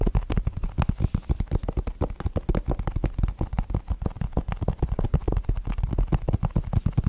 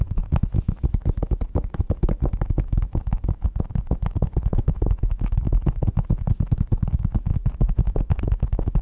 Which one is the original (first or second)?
first